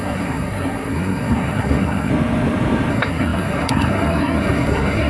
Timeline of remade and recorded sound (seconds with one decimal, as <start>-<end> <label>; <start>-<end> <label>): 0.0-2.1 remade; 2.1-2.9 recorded; 2.9-5.1 remade